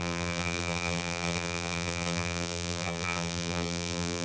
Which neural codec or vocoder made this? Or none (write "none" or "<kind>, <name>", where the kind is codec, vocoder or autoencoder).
vocoder, BigVGAN v2